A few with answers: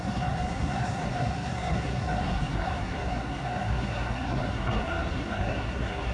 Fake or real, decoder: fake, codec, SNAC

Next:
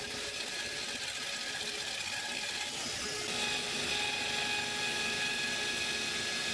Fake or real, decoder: real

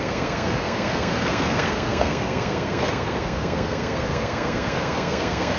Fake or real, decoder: fake, codec, SNAC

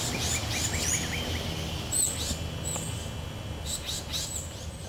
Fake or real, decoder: real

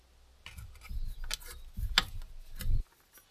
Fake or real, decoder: real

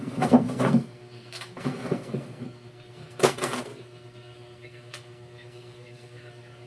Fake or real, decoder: fake, codec, SNAC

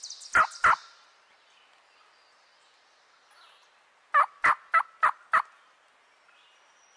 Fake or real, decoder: real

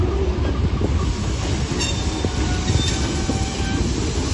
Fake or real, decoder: real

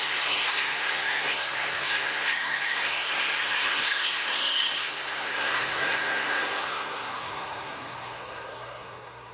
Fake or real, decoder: fake, codec, SNAC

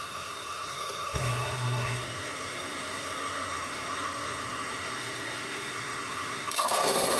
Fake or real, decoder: fake, codec, SNAC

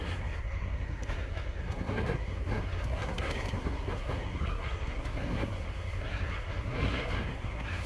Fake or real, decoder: fake, codec, SNAC